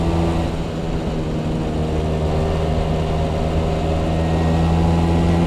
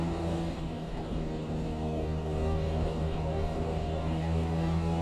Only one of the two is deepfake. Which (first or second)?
second